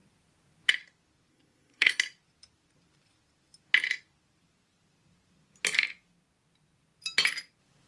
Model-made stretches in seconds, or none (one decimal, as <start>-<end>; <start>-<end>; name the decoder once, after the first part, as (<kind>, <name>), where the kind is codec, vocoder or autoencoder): 1.3-1.9 (codec, SNAC)